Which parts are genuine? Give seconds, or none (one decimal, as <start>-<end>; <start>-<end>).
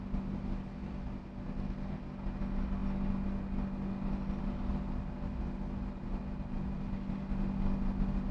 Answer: 0.0-8.3